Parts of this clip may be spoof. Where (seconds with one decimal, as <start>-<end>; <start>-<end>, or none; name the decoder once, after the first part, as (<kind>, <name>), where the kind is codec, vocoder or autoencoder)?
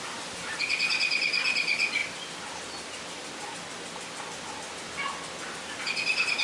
none